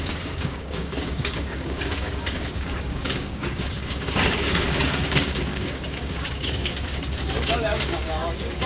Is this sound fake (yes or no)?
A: yes